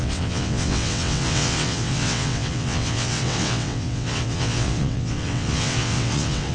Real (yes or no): no